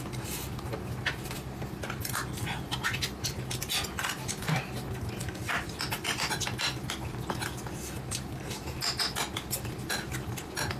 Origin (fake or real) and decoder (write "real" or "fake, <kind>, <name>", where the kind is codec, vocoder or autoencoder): real